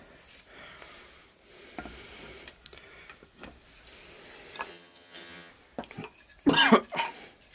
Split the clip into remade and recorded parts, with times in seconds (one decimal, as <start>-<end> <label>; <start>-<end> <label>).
0.0-4.7 recorded; 4.7-5.5 remade; 5.5-7.5 recorded